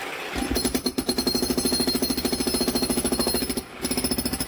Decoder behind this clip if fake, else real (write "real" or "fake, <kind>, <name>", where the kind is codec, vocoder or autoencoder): real